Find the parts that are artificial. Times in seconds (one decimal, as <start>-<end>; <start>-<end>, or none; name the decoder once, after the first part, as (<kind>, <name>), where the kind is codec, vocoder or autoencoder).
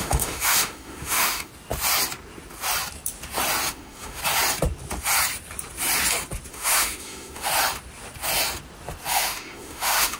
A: 0.0-1.5 (autoencoder, DAC-VAE); 3.7-4.2; 6.5-7.5; 9.1-10.2